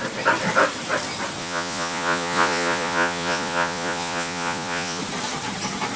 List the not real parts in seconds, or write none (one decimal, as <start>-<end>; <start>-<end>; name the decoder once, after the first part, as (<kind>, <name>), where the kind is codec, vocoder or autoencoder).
1.4-5.0 (vocoder, Vocos)